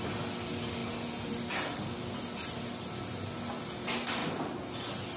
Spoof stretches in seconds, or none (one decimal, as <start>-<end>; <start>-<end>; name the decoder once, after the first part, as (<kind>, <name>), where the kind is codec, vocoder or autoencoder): none